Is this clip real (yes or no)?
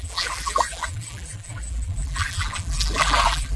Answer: no